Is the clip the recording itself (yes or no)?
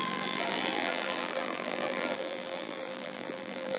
no